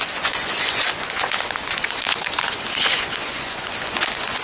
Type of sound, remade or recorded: remade